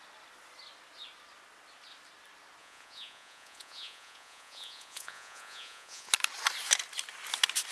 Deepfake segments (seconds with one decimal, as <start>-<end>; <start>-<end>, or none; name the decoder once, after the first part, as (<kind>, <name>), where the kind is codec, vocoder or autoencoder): 2.6-6.1 (vocoder, Vocos)